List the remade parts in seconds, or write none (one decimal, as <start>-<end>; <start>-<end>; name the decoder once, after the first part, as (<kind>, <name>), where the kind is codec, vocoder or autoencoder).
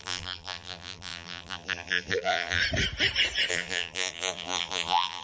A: 0.0-2.6 (vocoder, BigVGAN v2); 3.5-5.2